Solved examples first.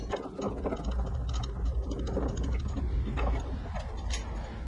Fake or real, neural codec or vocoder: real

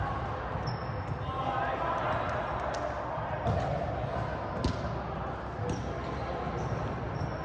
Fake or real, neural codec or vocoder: real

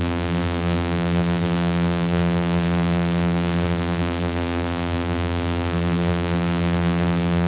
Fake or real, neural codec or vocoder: fake, vocoder, BigVGAN v2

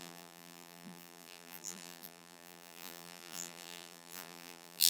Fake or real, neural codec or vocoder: fake, vocoder, BigVGAN v2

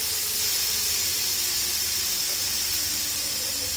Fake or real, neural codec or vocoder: real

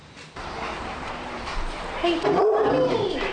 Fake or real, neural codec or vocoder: fake, vocoder, BigVGAN v2